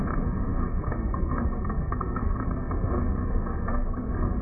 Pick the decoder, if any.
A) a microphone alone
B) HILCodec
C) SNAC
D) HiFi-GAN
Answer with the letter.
C